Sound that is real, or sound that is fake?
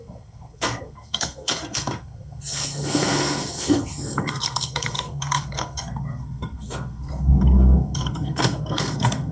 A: fake